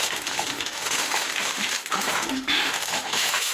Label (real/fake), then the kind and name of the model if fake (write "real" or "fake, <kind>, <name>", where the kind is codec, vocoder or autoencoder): fake, autoencoder, DAC-VAE